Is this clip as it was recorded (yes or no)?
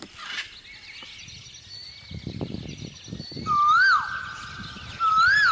yes